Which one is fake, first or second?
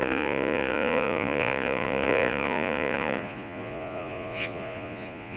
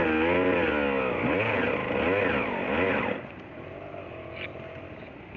first